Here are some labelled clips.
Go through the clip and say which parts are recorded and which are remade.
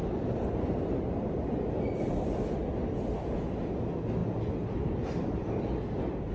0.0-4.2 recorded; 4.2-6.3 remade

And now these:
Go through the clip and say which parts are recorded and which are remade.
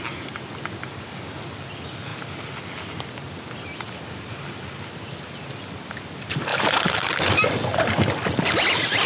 0.0-6.5 recorded; 6.5-7.0 remade; 7.0-7.7 recorded; 7.7-8.2 remade; 8.2-9.1 recorded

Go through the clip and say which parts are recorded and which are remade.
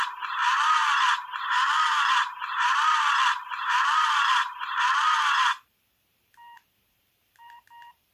0.0-8.1 remade